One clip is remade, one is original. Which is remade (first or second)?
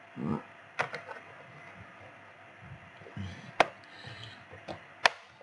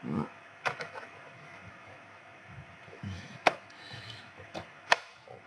second